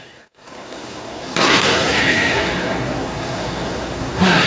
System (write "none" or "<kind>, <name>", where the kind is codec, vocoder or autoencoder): codec, SNAC